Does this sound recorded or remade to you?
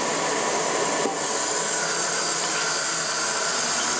recorded